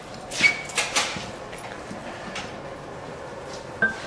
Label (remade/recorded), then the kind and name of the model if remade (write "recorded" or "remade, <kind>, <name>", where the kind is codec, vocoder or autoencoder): recorded